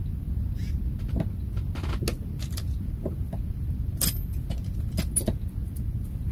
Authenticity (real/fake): real